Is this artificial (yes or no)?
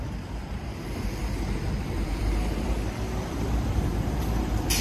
yes